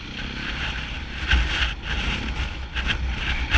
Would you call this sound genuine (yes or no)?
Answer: yes